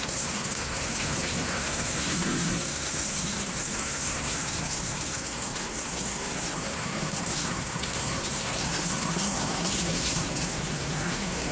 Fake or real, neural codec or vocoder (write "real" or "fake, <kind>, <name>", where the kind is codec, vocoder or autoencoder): fake, codec, SNAC